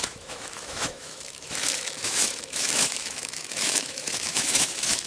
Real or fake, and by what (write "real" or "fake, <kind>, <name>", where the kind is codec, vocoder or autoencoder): fake, autoencoder, DAC-VAE